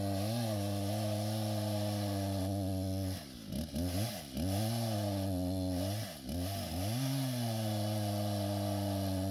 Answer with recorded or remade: recorded